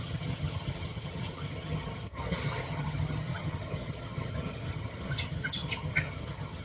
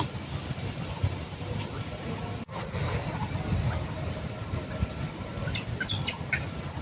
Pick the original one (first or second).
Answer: second